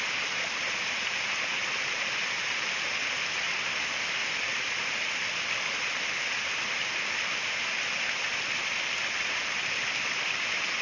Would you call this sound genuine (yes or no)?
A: yes